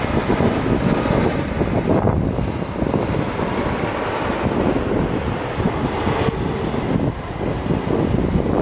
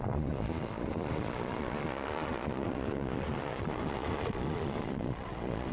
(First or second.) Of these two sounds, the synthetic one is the second